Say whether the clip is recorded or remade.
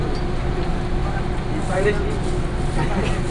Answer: recorded